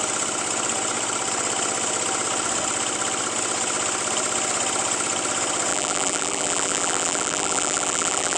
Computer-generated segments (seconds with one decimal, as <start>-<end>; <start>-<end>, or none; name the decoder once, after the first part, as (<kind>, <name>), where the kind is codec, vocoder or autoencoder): 5.7-8.4 (vocoder, BigVGAN v2)